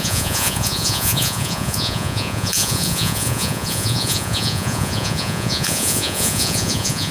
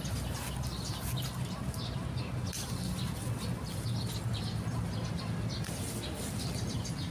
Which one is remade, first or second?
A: first